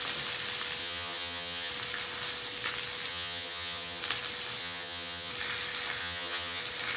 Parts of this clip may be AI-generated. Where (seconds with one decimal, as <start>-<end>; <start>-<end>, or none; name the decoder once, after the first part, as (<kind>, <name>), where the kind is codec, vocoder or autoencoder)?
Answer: 0.8-1.7 (vocoder, HiFi-GAN); 3.1-4.0; 4.6-5.3; 6.0-6.6